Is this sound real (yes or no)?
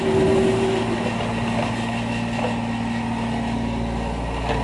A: yes